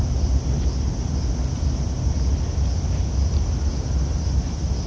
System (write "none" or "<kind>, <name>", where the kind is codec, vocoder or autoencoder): none